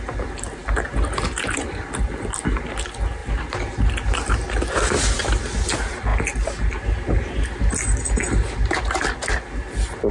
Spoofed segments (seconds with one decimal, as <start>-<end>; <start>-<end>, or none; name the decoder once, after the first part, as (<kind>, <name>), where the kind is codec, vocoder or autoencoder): none